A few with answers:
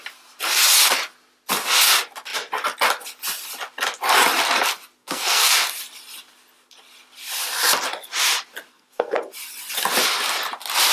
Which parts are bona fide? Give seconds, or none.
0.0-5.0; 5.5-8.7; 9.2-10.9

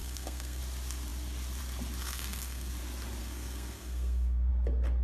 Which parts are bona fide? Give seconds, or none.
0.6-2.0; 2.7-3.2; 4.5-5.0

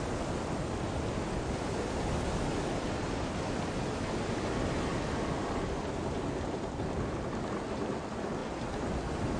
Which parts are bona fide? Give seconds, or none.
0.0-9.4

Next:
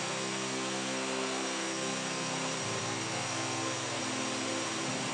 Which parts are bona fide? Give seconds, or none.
2.3-2.8; 4.0-5.1

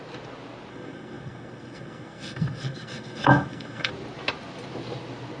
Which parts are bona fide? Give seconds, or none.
0.0-0.7; 3.9-5.4